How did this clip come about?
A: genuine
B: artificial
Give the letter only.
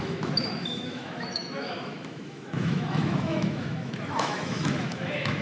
B